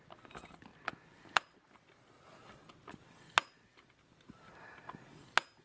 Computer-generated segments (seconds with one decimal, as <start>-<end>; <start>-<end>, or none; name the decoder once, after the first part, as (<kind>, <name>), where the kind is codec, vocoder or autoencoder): none